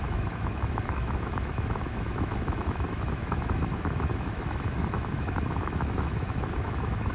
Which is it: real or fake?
fake